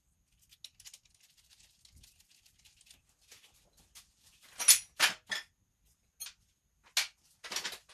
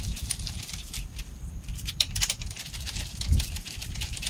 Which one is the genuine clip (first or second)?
first